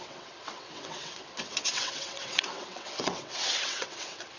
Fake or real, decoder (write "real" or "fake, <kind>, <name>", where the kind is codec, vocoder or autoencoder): fake, vocoder, WaveNeXt